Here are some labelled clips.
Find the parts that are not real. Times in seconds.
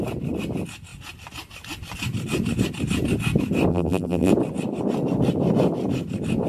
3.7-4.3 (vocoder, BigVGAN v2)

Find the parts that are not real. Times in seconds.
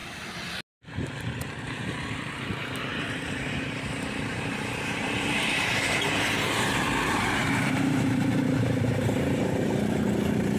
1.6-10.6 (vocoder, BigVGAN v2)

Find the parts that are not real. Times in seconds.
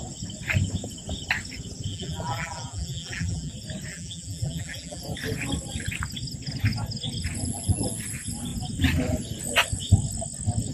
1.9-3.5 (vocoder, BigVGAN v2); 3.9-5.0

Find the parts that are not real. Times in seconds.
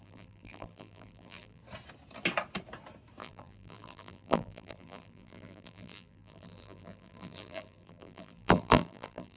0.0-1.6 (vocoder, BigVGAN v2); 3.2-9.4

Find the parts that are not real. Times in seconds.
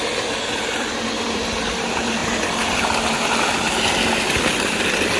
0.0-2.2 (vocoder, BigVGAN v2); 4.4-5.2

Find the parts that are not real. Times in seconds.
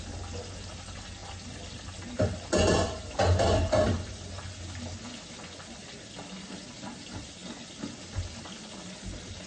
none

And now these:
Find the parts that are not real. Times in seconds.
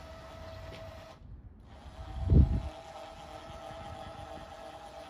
none